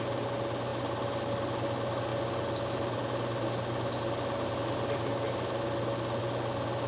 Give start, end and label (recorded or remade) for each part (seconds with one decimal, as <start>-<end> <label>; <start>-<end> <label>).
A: 0.0-0.7 recorded; 0.7-1.3 remade; 1.3-2.1 recorded; 2.1-6.2 remade; 6.2-6.9 recorded